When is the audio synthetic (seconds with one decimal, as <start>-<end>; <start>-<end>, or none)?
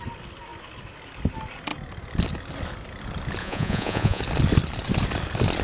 3.4-4.2